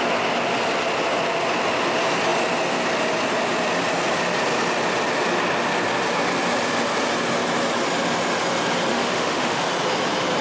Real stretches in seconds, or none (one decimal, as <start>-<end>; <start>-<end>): 0.0-8.9; 9.6-10.4